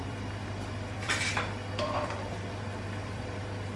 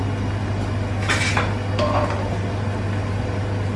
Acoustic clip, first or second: second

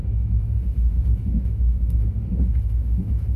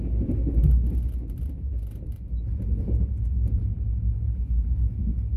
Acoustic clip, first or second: second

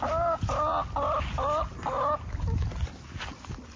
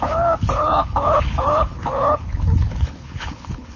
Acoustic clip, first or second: first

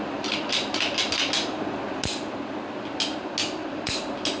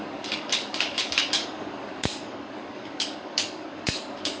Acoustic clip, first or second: first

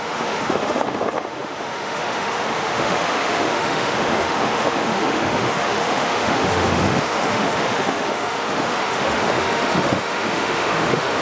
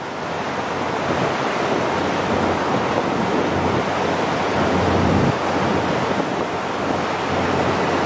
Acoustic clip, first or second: second